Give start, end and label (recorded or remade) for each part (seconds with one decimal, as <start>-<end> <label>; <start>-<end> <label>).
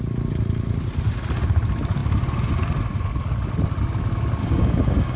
0.0-4.4 recorded; 4.4-5.2 remade